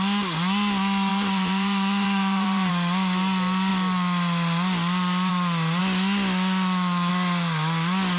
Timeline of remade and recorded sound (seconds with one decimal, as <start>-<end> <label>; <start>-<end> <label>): 0.0-1.1 recorded; 1.1-2.7 remade; 2.7-8.2 recorded